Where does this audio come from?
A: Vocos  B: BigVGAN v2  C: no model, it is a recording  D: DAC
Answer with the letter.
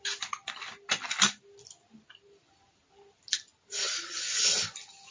C